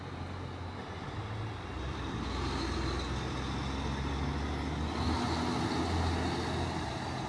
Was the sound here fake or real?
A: real